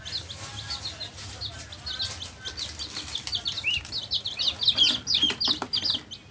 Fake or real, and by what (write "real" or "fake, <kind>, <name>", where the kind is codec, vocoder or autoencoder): real